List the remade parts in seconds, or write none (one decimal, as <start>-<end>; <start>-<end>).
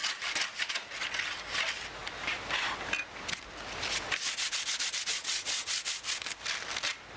5.1-5.7